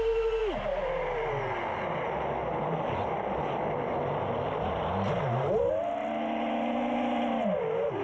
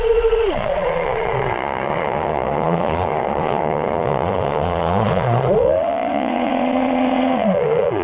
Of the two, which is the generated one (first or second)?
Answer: second